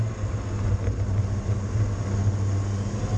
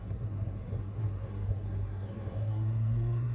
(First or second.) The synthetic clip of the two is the second